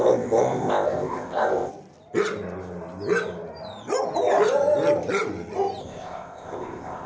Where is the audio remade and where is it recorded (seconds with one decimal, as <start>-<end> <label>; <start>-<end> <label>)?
0.0-1.7 remade; 1.7-5.8 recorded; 5.8-7.1 remade